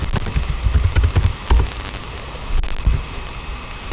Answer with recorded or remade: recorded